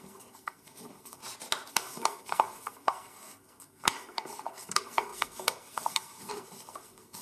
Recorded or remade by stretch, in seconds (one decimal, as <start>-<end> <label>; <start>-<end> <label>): 0.0-1.2 remade; 1.2-1.7 recorded; 1.7-7.2 remade